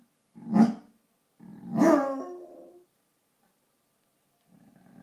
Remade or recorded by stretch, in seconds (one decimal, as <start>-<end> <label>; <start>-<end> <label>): 0.0-5.0 recorded